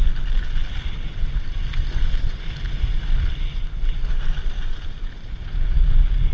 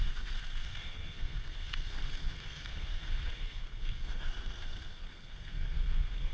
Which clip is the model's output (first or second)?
second